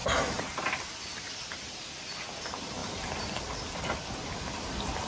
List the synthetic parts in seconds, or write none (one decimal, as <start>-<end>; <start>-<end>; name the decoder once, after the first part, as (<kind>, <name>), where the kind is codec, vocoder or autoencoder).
2.8-3.5 (vocoder, BigVGAN v2)